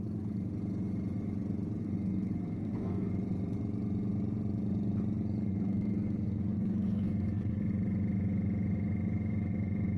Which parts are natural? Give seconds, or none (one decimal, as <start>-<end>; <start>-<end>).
0.0-1.8; 3.1-5.5; 7.5-10.0